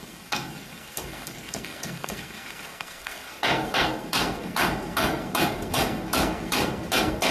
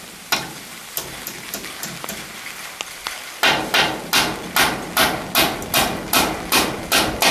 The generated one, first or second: first